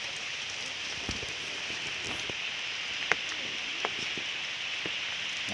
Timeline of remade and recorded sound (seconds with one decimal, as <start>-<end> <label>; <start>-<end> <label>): 0.0-5.5 recorded